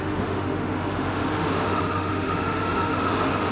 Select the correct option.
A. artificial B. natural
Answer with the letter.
A